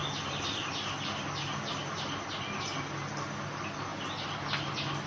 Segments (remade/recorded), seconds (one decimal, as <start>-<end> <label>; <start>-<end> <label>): 0.0-5.1 recorded